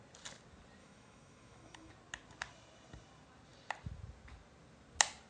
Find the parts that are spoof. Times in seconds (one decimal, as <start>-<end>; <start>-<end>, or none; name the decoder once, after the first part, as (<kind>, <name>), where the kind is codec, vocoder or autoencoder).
0.8-1.9 (autoencoder, DAC-VAE)